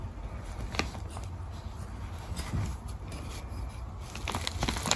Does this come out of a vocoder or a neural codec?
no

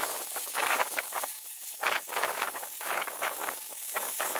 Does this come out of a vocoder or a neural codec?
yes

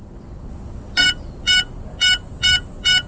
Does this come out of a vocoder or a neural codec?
no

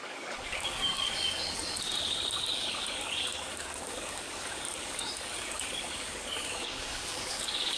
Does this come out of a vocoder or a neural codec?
yes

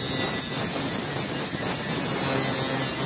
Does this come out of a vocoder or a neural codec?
no